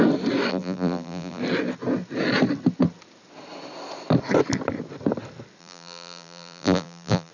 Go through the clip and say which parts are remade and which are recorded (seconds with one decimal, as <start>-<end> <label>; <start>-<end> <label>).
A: 0.0-0.5 recorded; 0.5-1.4 remade; 1.4-5.6 recorded; 5.6-7.3 remade